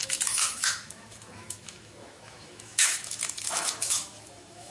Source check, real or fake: fake